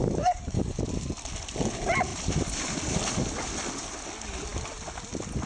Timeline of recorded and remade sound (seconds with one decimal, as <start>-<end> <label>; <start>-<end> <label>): 0.0-0.8 remade; 0.8-5.5 recorded